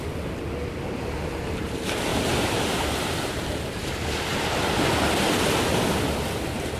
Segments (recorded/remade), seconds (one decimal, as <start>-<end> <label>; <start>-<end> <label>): 0.0-2.1 recorded; 2.1-3.4 remade; 3.4-6.8 recorded